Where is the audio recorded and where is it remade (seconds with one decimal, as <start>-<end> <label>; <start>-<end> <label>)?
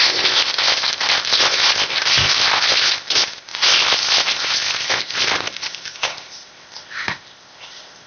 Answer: 0.0-8.1 remade